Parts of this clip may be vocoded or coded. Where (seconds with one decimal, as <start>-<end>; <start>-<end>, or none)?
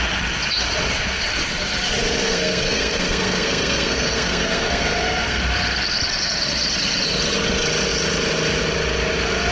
2.2-5.4